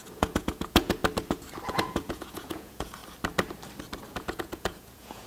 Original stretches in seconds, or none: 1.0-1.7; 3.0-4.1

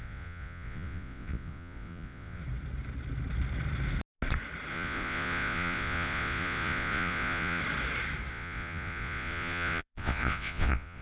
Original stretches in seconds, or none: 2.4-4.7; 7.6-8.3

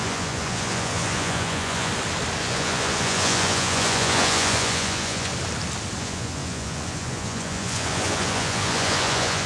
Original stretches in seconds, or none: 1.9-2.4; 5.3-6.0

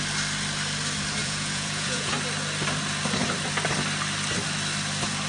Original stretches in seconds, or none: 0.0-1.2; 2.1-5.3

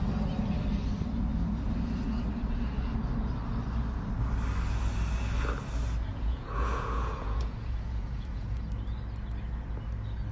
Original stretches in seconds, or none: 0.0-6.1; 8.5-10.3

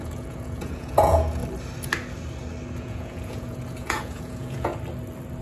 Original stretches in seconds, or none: 1.4-2.8; 4.7-5.4

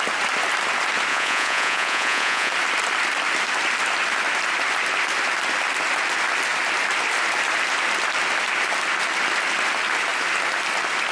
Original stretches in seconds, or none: 0.0-1.1; 2.5-11.1